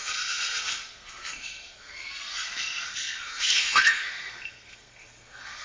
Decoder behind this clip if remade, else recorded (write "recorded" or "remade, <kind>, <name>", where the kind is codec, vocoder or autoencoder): remade, codec, SNAC